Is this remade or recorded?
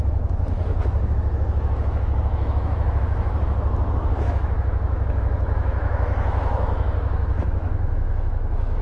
remade